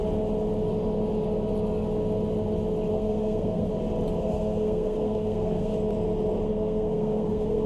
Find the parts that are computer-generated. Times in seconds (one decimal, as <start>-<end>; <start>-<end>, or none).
2.9-3.7; 4.2-5.7; 6.4-7.7